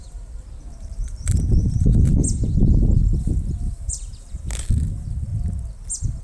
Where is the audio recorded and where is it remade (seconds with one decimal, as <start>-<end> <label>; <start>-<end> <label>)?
0.0-1.9 remade; 1.9-3.6 recorded; 3.6-5.3 remade; 5.3-6.2 recorded